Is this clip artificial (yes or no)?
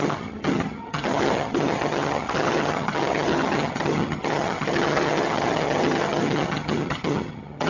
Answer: yes